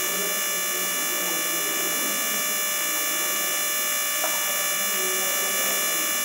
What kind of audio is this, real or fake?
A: real